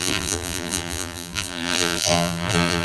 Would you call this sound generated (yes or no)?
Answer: yes